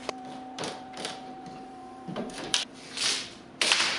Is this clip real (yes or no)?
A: no